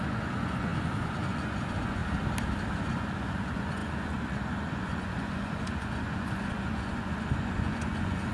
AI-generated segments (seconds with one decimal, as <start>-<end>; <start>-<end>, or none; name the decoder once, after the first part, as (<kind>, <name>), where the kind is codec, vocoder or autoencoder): 0.0-2.0 (vocoder, Vocos); 2.7-8.3